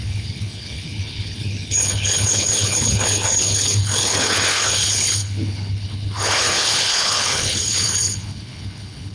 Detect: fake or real fake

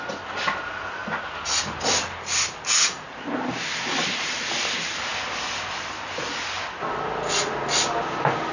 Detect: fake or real real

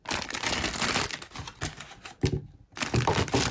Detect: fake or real real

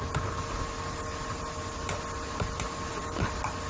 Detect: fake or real real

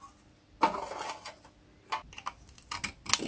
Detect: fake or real real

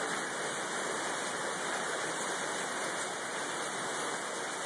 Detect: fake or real real